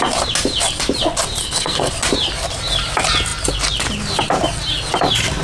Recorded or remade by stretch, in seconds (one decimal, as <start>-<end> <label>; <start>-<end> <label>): 0.0-1.4 recorded; 1.4-1.9 remade; 1.9-5.4 recorded